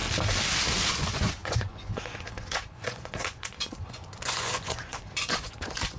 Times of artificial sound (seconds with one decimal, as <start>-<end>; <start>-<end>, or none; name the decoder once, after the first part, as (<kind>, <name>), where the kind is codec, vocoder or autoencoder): 0.9-6.0 (vocoder, Vocos)